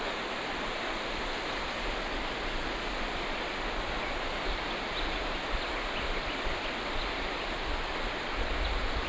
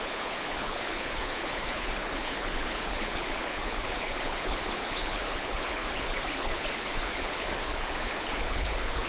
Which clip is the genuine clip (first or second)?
first